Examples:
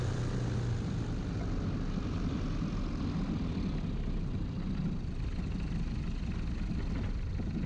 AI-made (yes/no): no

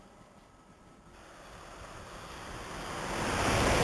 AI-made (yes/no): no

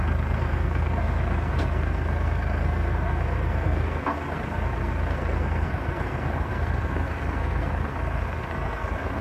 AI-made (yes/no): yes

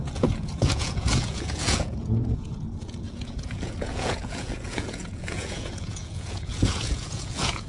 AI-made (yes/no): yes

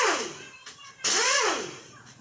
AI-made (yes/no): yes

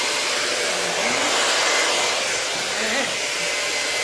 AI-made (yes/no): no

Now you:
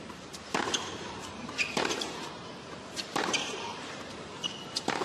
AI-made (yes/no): yes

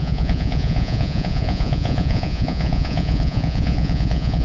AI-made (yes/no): yes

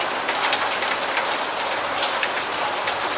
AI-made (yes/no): no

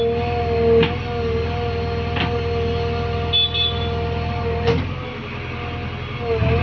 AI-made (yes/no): no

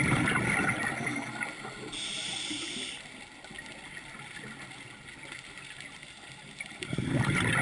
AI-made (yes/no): no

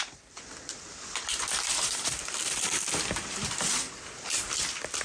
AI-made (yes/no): yes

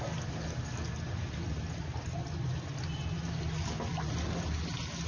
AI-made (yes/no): no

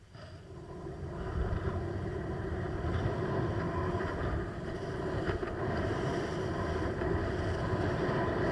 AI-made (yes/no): no